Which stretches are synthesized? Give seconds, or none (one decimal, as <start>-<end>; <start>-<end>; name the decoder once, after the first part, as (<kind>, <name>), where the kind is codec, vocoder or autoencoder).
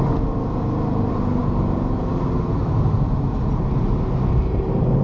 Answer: 2.6-5.0 (vocoder, BigVGAN v2)